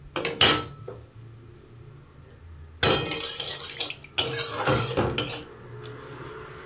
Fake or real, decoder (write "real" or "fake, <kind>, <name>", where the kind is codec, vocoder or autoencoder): real